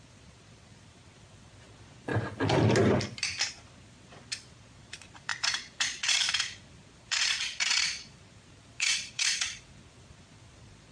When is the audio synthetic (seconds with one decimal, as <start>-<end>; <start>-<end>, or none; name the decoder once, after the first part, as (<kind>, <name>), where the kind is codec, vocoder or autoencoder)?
0.0-2.1 (vocoder, Vocos); 3.5-10.9